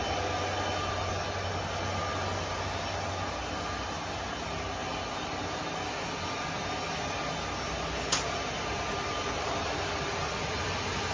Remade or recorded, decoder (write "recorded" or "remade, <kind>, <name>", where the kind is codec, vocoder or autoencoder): recorded